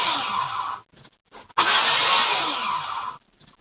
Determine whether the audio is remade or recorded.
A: recorded